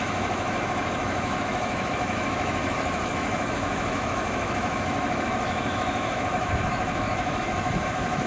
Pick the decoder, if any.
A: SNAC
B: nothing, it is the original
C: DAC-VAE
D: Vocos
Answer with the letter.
C